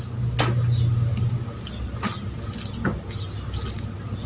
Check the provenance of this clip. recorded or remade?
recorded